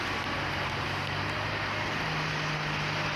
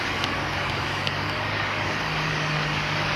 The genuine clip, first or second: first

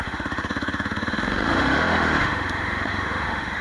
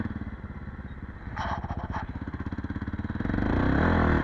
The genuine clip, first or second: second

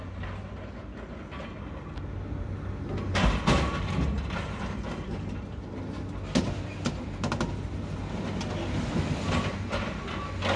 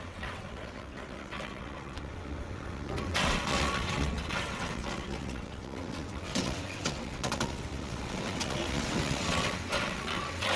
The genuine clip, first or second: first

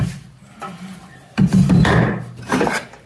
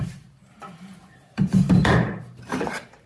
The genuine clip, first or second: first